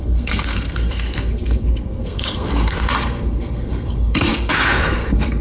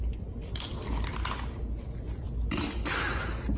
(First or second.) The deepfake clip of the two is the first